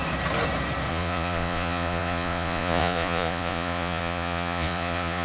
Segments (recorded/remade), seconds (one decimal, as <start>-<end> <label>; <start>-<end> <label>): 0.0-0.9 recorded; 0.9-5.2 remade